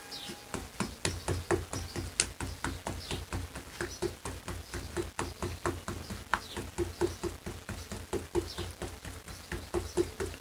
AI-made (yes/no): no